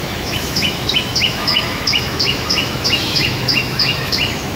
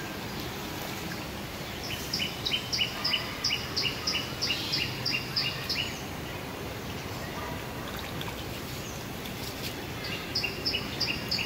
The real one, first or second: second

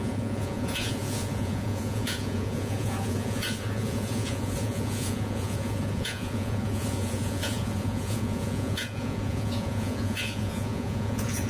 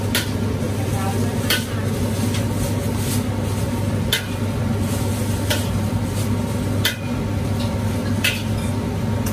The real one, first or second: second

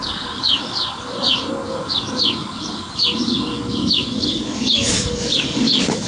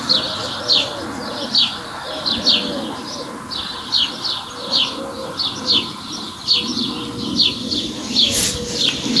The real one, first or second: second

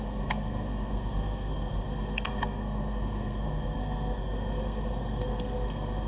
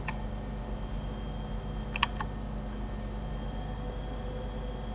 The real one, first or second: second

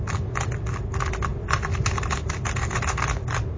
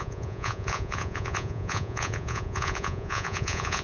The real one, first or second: first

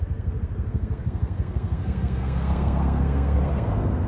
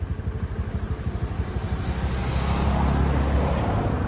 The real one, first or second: second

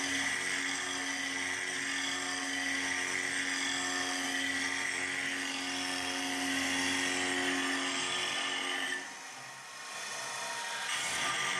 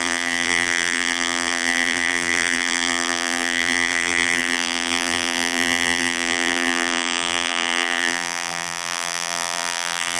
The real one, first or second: first